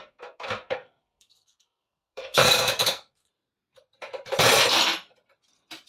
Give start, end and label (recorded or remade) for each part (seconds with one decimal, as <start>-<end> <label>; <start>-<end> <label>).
0.0-3.3 remade; 3.3-5.9 recorded